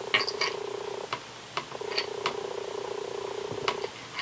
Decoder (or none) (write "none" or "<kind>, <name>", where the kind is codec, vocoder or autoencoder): none